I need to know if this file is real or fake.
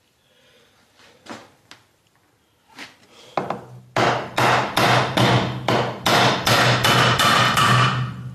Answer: real